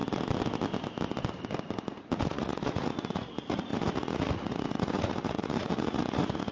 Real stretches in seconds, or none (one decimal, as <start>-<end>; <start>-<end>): 0.0-2.2